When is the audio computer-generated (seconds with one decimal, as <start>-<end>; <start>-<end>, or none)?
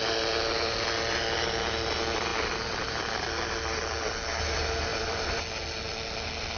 2.3-3.1; 4.9-5.4